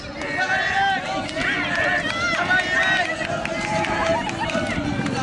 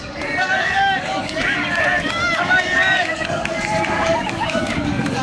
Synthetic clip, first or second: second